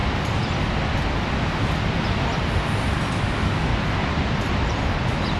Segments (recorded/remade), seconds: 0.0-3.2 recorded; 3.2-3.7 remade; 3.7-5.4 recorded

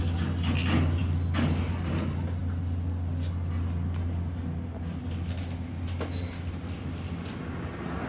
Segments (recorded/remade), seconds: 0.0-8.1 recorded

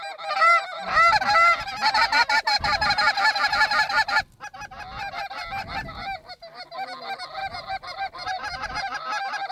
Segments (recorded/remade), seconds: 0.0-7.4 recorded; 7.4-8.7 remade; 8.7-9.5 recorded